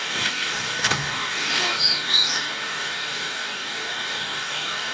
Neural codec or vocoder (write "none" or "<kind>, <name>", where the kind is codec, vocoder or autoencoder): codec, DAC